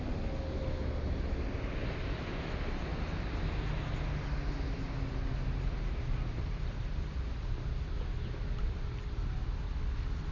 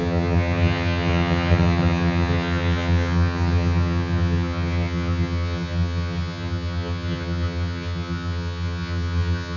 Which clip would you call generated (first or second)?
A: second